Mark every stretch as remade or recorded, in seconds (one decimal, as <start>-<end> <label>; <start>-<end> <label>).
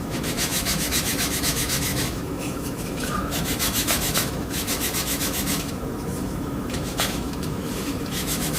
0.0-8.6 remade